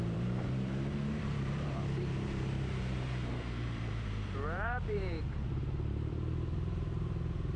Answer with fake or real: fake